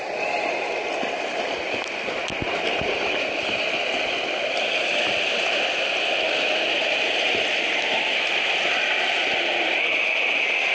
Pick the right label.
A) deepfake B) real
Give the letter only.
B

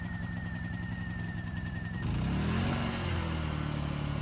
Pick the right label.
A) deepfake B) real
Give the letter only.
B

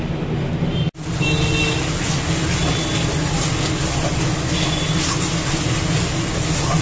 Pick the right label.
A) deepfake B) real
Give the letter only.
B